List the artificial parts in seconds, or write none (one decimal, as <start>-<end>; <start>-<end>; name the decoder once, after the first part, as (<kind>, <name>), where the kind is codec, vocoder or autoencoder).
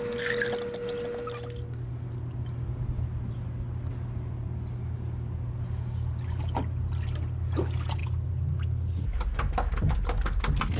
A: none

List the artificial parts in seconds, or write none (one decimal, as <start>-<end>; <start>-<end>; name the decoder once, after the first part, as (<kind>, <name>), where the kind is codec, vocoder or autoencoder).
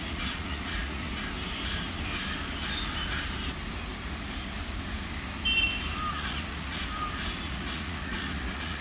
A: 0.0-1.1 (vocoder, Vocos); 6.1-6.8; 7.4-8.8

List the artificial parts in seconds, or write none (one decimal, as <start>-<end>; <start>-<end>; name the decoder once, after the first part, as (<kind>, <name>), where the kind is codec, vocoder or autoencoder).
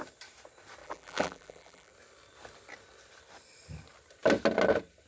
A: 0.8-1.9 (vocoder, BigVGAN v2)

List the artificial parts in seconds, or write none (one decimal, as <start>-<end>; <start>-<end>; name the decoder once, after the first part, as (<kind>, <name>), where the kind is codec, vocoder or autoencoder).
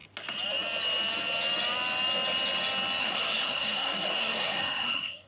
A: 3.0-5.3 (codec, SNAC)